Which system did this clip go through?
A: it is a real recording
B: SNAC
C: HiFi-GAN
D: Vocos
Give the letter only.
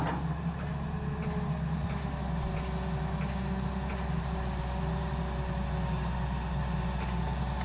A